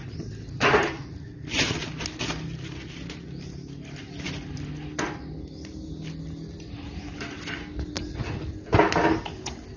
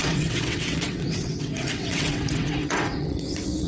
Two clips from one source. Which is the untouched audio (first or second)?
first